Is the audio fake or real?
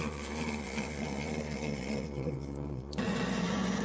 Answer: fake